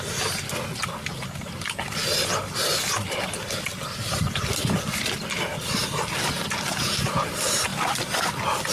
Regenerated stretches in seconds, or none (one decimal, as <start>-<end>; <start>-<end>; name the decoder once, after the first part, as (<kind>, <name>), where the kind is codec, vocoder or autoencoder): 5.8-6.3 (vocoder, BigVGAN v2); 7.7-8.2